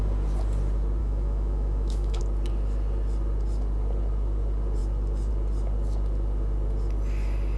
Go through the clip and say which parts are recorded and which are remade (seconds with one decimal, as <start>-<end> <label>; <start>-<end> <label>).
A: 0.0-1.0 recorded; 1.0-2.2 remade; 2.2-7.6 recorded